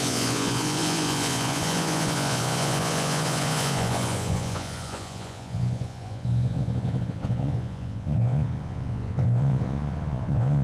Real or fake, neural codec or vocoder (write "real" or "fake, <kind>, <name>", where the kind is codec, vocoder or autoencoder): fake, vocoder, Vocos